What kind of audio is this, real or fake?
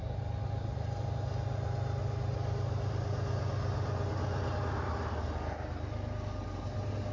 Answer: real